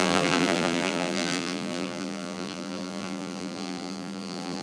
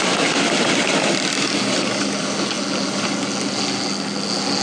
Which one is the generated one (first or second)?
first